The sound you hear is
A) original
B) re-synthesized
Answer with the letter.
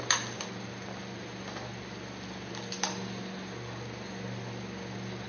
A